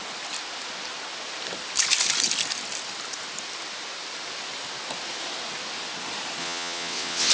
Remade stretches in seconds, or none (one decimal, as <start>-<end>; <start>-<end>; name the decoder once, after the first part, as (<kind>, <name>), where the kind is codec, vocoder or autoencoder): 6.4-7.3 (vocoder, WaveNeXt)